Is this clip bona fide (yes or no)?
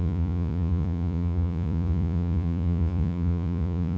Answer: no